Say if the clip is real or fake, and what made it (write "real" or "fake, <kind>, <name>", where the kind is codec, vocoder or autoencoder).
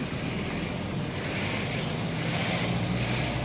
real